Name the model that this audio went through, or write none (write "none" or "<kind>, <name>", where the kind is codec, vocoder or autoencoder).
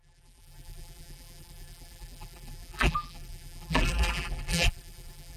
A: vocoder, BigVGAN v2